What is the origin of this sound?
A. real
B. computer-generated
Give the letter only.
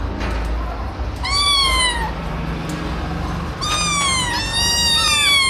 A